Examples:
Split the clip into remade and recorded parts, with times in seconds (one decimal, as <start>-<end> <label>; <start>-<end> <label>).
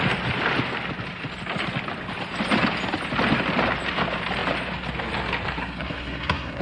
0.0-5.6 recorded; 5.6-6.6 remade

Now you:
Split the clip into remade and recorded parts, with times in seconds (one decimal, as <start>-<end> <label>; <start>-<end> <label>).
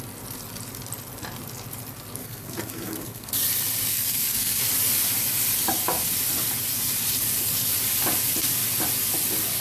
0.0-2.2 recorded; 2.2-3.3 remade; 3.3-3.9 recorded; 3.9-4.6 remade; 4.6-9.6 recorded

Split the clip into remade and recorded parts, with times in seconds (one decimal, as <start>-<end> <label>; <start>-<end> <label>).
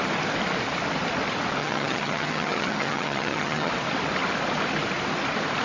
0.0-1.6 recorded; 1.6-3.7 remade; 3.7-5.6 recorded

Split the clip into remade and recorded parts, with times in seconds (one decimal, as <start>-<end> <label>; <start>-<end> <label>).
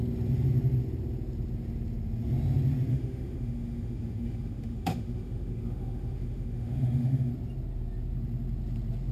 0.0-2.9 recorded; 2.9-7.3 remade; 7.3-9.1 recorded